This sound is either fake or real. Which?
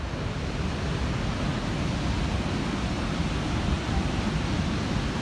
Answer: real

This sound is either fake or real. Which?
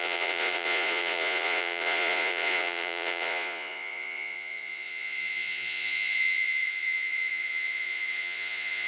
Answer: fake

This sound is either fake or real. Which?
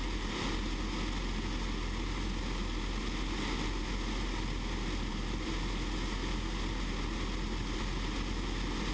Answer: real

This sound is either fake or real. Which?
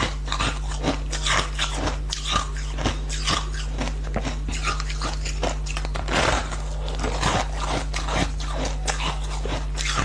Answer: real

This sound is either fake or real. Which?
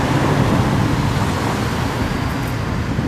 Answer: real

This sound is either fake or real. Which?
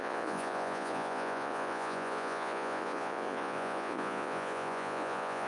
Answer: fake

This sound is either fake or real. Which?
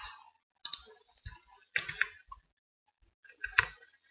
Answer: real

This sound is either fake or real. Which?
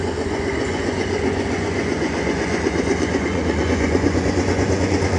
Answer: fake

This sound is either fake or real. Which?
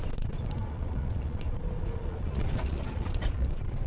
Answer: fake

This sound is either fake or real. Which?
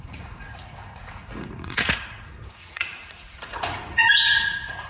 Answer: fake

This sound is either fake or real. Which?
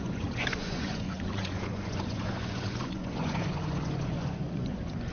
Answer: fake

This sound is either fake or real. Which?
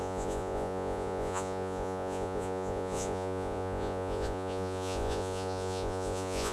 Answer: fake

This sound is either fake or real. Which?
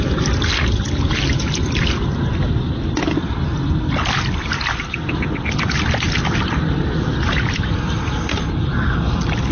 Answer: real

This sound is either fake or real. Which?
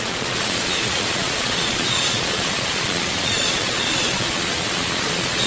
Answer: fake